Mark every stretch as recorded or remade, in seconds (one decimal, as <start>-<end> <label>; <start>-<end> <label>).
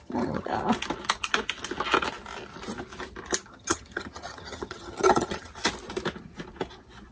0.0-0.5 remade; 0.5-3.5 recorded; 3.5-5.5 remade; 5.5-7.1 recorded